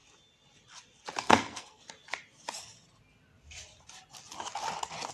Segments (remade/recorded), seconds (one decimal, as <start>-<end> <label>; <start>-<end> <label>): 0.0-1.2 recorded; 1.2-1.8 remade; 1.8-5.1 recorded